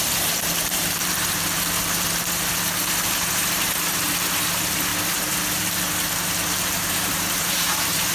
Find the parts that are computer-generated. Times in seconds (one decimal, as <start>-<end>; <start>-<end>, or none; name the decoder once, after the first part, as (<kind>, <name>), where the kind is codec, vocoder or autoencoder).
0.0-4.9 (vocoder, BigVGAN v2); 5.6-8.1